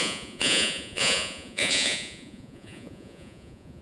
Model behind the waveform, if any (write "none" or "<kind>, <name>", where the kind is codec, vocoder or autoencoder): vocoder, Vocos